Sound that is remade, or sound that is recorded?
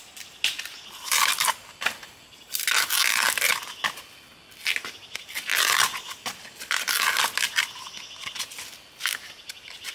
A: recorded